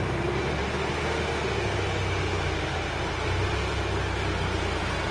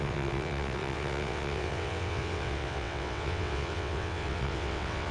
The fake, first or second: second